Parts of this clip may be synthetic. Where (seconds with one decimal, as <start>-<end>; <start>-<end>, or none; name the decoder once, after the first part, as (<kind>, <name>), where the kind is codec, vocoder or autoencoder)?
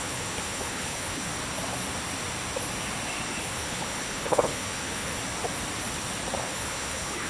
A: 0.0-1.3 (codec, HILCodec); 3.4-5.2; 6.4-7.3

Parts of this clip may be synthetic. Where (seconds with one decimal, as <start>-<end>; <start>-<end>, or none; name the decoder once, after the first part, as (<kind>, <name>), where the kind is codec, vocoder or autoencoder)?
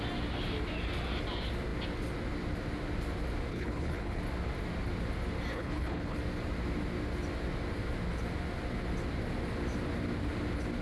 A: 3.5-4.2 (codec, HILCodec); 5.5-6.2